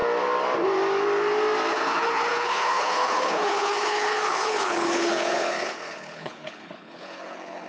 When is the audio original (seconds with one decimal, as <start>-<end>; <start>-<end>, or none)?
0.0-1.7